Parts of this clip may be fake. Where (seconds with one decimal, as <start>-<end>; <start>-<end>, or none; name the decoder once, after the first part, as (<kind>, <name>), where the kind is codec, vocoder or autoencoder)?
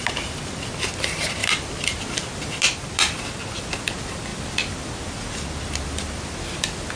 none